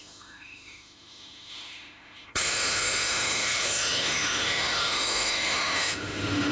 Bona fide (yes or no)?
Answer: no